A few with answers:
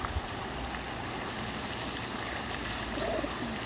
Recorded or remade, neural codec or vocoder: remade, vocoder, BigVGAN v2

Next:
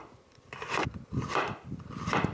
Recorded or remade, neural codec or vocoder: recorded